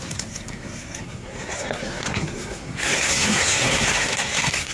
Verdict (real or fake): fake